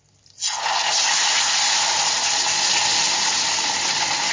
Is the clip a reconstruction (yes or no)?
no